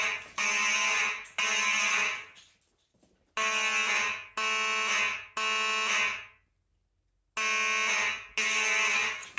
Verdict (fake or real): real